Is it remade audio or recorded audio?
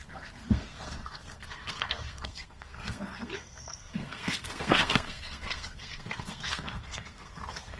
remade